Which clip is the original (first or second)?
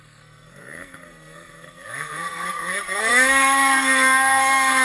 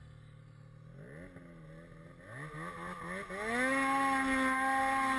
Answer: second